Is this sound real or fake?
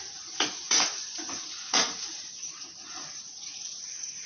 fake